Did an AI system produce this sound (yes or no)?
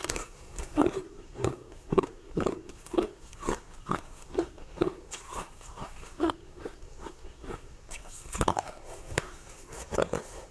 yes